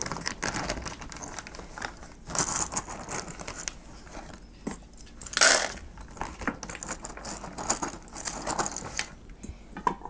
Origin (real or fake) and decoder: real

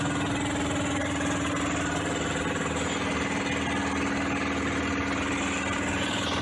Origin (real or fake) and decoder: real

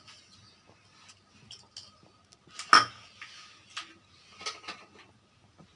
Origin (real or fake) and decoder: real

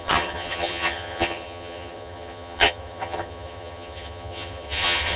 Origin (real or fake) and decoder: fake, vocoder, HiFi-GAN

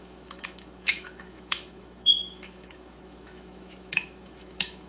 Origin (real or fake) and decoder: fake, autoencoder, DAC-VAE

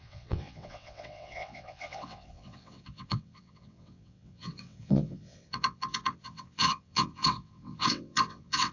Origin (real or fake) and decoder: fake, vocoder, WaveNeXt